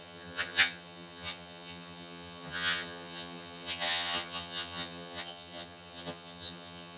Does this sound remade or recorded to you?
remade